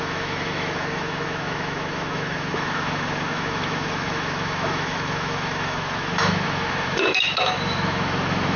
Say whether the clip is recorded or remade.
remade